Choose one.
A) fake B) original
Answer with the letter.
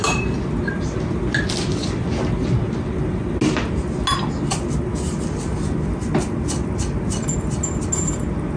B